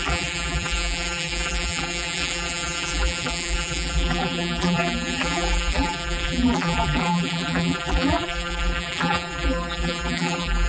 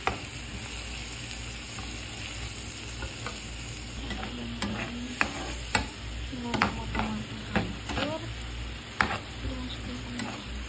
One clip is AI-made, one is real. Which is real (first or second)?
second